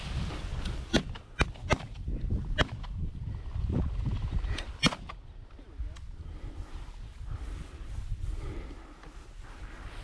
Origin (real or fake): real